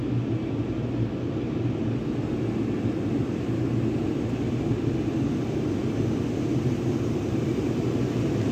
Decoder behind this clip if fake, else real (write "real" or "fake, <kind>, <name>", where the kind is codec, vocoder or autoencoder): real